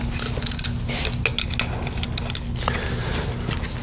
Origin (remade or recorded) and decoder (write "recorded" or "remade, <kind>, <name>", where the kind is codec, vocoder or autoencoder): recorded